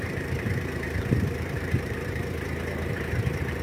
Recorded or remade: remade